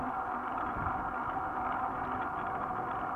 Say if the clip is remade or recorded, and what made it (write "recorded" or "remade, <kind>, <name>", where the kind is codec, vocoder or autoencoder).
recorded